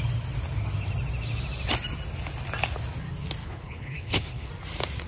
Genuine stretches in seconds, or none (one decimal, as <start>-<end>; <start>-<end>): 0.0-3.4; 4.5-5.1